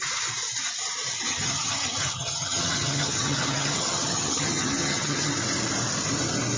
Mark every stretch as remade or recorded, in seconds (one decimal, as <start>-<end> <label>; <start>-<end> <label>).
0.0-1.3 recorded; 1.3-5.3 remade; 5.3-6.6 recorded